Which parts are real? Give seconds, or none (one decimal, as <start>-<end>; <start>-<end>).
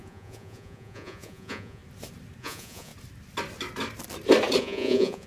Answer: 1.8-2.4; 2.9-4.6